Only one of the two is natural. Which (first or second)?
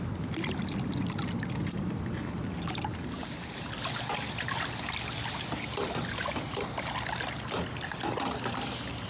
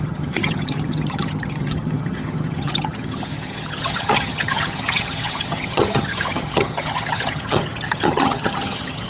first